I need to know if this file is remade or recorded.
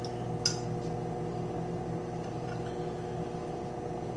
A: recorded